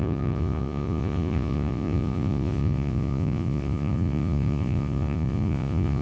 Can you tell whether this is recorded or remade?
remade